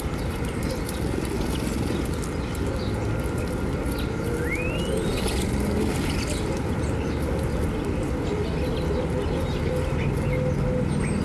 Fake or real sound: real